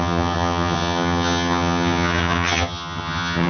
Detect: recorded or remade remade